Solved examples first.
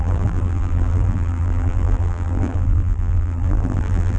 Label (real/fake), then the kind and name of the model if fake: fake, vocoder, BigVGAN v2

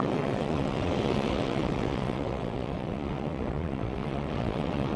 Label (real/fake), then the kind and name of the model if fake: fake, vocoder, WaveNeXt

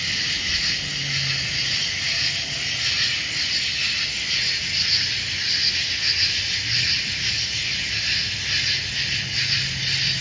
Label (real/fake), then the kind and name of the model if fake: real